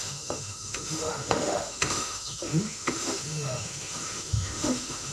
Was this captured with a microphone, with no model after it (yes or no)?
no